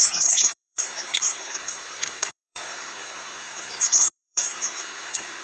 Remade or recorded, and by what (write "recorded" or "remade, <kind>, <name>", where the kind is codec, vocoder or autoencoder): remade, codec, SNAC